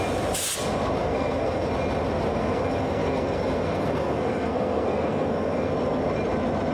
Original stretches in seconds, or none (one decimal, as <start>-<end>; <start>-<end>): 0.0-1.0; 1.7-2.3; 5.7-6.7